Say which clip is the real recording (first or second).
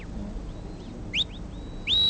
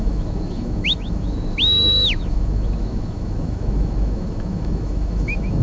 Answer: first